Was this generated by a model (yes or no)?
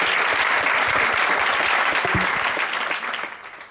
no